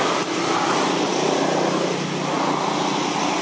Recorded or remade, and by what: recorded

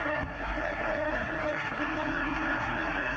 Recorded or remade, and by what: remade, codec, SNAC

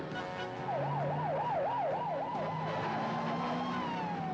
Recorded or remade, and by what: recorded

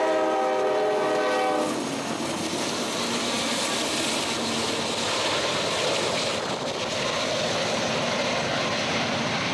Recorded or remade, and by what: recorded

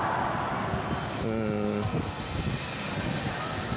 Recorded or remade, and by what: recorded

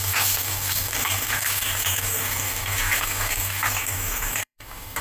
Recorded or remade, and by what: remade, codec, DAC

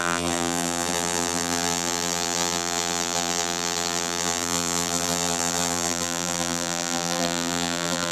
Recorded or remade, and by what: remade, vocoder, BigVGAN v2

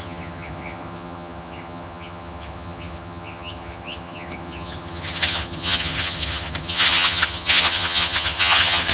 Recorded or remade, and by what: remade, vocoder, HiFi-GAN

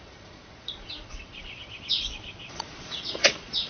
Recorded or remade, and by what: remade, vocoder, Vocos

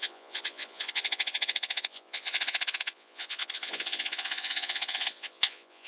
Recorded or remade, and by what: remade, vocoder, Vocos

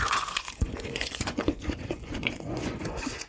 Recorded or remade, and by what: remade, vocoder, Vocos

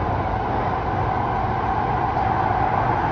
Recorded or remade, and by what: recorded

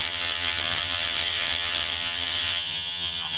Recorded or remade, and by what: remade, vocoder, HiFi-GAN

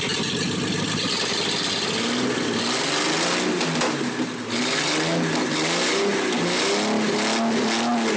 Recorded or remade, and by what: recorded